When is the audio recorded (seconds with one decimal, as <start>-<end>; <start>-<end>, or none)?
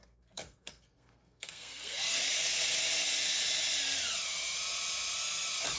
2.2-5.8